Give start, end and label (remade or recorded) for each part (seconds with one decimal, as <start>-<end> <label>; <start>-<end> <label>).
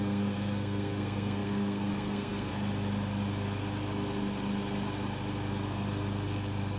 0.0-2.5 remade; 2.5-6.8 recorded